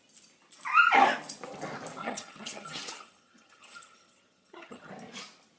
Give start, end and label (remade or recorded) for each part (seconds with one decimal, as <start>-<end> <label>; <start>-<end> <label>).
0.0-2.0 recorded; 2.0-4.9 remade; 4.9-5.6 recorded